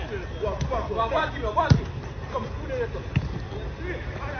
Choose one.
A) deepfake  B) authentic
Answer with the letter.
B